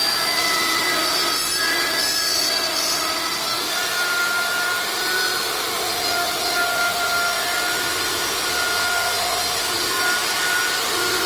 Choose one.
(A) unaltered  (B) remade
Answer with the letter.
A